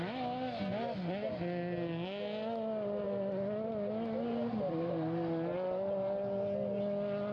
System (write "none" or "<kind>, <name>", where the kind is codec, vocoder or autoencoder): none